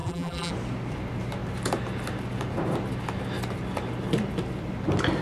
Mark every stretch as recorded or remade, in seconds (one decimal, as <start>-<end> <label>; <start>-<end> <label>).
0.0-0.5 remade; 0.5-5.2 recorded